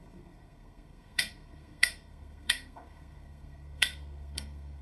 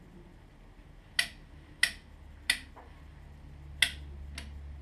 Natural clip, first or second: second